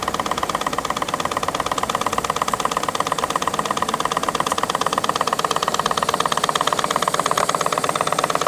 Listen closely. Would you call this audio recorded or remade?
recorded